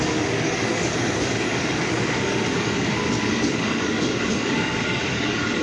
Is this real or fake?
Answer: fake